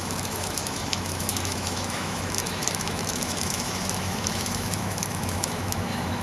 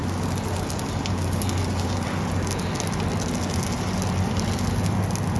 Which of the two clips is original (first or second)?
second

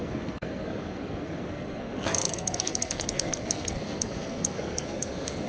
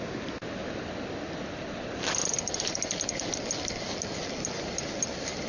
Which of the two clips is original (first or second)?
second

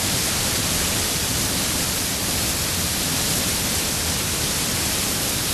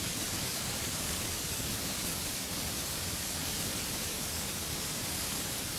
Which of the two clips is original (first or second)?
first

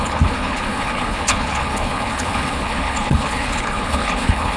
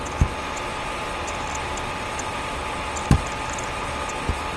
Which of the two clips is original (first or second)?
second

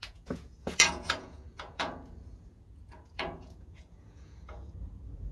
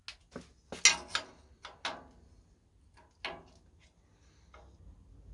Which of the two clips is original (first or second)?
second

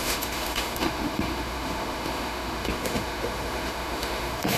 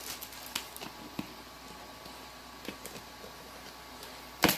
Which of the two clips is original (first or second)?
second